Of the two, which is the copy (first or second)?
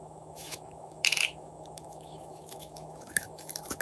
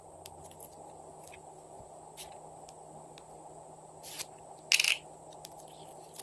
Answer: first